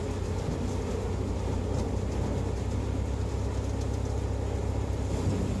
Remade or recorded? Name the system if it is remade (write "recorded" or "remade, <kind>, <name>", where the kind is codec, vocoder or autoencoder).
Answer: recorded